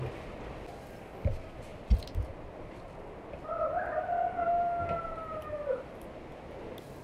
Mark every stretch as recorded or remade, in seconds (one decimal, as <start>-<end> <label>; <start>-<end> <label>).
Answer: 0.0-7.0 recorded

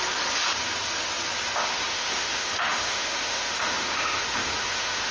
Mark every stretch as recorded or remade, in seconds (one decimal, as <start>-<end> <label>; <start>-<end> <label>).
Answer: 0.0-1.6 recorded; 1.6-5.1 remade

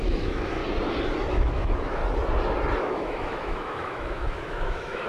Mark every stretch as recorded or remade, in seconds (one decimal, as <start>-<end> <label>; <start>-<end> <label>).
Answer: 0.0-0.6 remade; 0.6-1.3 recorded; 1.3-2.0 remade; 2.0-2.8 recorded; 2.8-5.1 remade

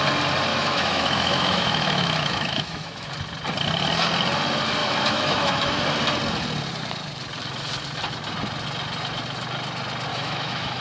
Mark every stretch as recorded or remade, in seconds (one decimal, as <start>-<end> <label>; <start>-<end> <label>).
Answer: 0.0-0.5 recorded; 0.5-3.1 remade; 3.1-4.8 recorded; 4.8-5.8 remade; 5.8-10.1 recorded; 10.1-10.8 remade

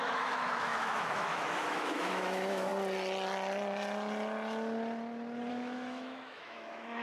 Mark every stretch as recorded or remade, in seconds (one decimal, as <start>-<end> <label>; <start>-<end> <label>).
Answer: 0.0-2.7 remade; 2.7-5.5 recorded; 5.5-7.0 remade

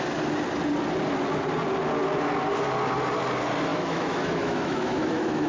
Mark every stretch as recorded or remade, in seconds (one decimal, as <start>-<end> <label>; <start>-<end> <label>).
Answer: 0.0-3.7 recorded; 3.7-5.5 remade